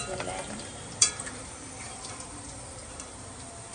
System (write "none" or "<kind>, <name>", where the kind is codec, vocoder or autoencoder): vocoder, BigVGAN v2